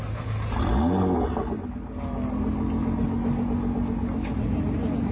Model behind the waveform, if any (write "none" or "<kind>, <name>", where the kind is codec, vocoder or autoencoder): none